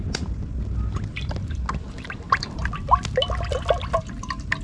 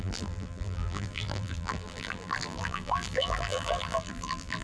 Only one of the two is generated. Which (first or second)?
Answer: second